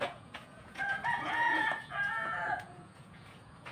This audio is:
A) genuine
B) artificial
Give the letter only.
B